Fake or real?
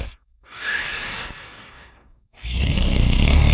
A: fake